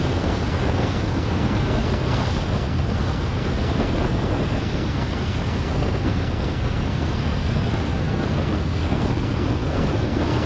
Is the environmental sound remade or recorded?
remade